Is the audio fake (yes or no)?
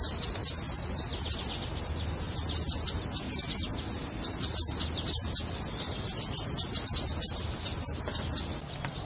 no